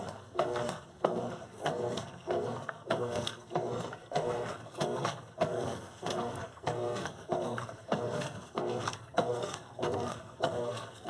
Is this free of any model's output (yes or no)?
no